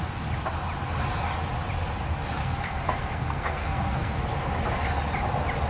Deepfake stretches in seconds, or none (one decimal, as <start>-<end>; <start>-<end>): 2.4-4.2